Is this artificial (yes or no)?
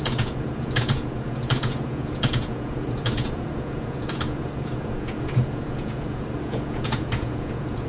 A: yes